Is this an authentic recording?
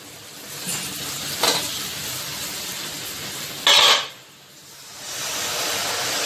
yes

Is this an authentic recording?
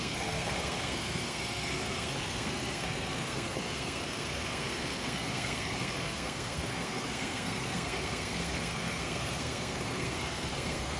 no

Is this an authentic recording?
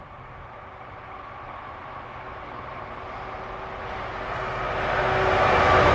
yes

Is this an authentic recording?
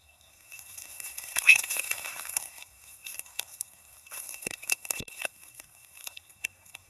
no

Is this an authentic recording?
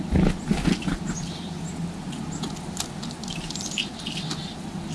yes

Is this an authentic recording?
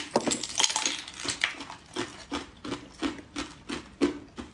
yes